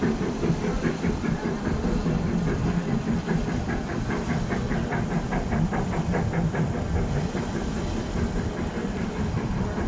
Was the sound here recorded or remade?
recorded